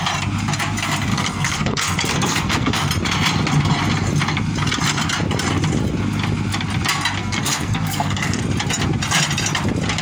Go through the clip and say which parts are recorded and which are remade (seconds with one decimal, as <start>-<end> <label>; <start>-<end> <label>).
0.0-1.1 recorded; 1.1-2.9 remade; 2.9-7.2 recorded; 7.2-8.4 remade; 8.4-10.0 recorded